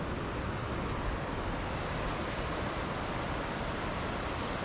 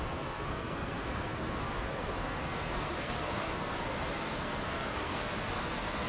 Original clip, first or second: first